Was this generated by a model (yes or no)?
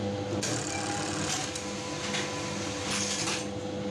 no